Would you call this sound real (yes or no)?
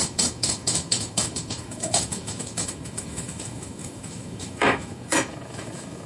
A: no